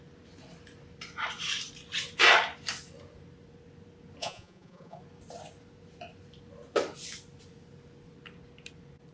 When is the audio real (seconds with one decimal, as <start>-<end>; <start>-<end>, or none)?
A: 0.0-4.2; 5.0-9.1